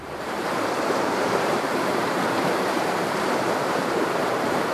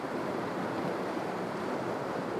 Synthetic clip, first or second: first